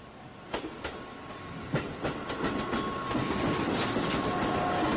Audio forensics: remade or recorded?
recorded